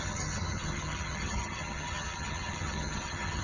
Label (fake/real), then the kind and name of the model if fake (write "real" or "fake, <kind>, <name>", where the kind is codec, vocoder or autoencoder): fake, vocoder, HiFi-GAN